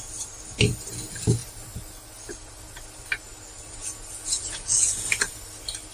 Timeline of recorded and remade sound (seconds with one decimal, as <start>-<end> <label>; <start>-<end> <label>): 0.0-3.8 recorded; 3.8-5.3 remade; 5.3-5.9 recorded